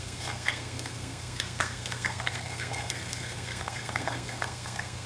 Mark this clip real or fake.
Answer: fake